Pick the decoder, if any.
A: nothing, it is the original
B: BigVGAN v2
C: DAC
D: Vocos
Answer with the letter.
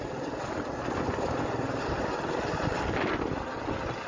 A